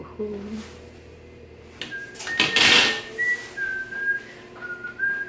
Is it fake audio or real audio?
real